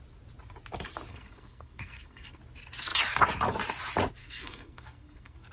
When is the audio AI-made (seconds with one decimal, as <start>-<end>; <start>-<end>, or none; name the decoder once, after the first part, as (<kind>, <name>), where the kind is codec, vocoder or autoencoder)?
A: 1.1-2.4 (codec, SNAC); 4.2-5.5